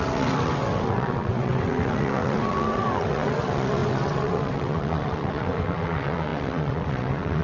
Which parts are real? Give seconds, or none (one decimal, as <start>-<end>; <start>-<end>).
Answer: none